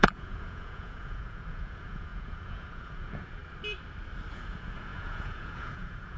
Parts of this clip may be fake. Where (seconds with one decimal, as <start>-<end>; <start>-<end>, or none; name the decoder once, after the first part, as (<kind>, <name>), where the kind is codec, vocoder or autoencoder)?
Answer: 0.0-3.4 (vocoder, Vocos); 4.3-6.2